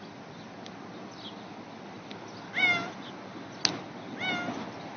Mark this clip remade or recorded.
recorded